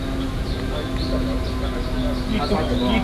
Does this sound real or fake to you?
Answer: real